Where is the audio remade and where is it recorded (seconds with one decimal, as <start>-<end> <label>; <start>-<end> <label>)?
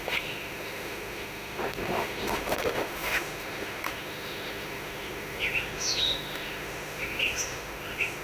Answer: 0.0-8.2 remade